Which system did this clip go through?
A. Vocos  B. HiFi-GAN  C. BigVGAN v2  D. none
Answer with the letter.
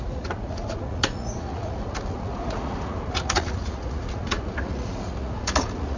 A